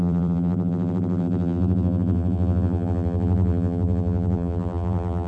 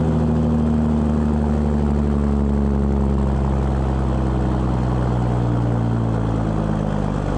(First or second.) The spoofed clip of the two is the first